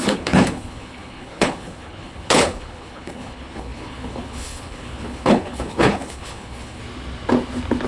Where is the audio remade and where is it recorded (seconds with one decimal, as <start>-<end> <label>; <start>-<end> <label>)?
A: 0.0-6.8 remade; 6.8-7.9 recorded

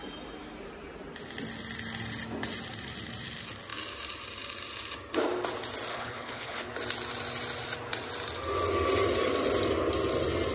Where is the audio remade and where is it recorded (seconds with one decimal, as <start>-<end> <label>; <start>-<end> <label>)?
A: 0.0-5.9 recorded; 5.9-6.7 remade; 6.7-10.5 recorded

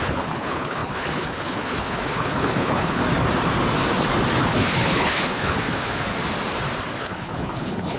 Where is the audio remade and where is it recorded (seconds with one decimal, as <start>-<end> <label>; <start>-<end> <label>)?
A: 0.0-3.0 remade; 3.0-4.4 recorded; 4.4-6.1 remade; 6.1-7.0 recorded; 7.0-8.0 remade

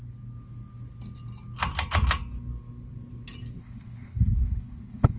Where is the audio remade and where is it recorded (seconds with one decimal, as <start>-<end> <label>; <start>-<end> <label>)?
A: 0.0-3.6 recorded; 3.6-5.2 remade